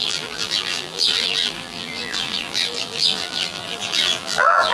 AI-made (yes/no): yes